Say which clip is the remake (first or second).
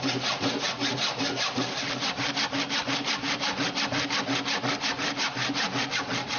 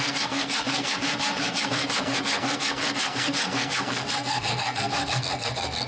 second